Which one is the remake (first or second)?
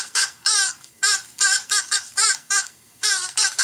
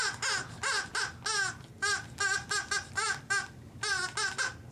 first